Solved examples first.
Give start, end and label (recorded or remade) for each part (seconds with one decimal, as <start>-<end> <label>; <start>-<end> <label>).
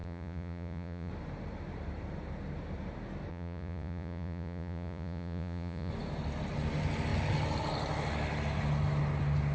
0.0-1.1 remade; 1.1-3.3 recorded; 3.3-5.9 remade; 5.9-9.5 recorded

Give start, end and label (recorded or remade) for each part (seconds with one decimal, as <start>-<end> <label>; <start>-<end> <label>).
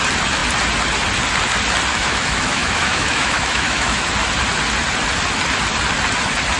0.0-1.9 recorded; 1.9-4.1 remade; 4.1-6.6 recorded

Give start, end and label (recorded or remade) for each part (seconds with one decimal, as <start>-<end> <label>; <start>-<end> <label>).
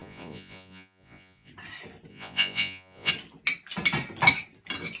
0.0-1.5 remade; 1.5-2.1 recorded; 2.1-3.1 remade; 3.1-5.0 recorded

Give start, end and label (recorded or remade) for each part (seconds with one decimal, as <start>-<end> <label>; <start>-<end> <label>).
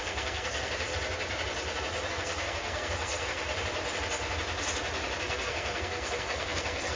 0.0-0.9 remade; 0.9-2.1 recorded; 2.1-3.4 remade; 3.4-5.2 recorded; 5.2-7.0 remade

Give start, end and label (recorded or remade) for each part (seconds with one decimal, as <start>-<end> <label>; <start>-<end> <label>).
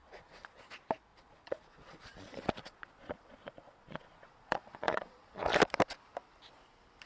0.0-0.7 remade; 0.7-1.1 recorded; 1.1-5.4 remade; 5.4-7.1 recorded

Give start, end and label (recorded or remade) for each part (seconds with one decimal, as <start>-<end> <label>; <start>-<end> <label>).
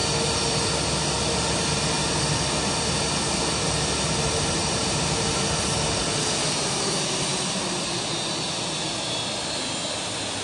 0.0-10.4 recorded